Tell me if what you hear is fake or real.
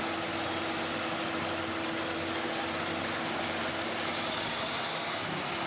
real